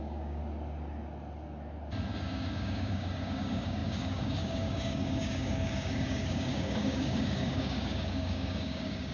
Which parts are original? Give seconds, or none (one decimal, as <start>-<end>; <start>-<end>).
0.4-2.1